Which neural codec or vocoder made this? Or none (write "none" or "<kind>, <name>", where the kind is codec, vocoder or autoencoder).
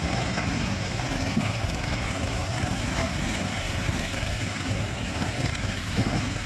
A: codec, SNAC